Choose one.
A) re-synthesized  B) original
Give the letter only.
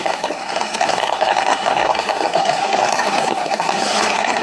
A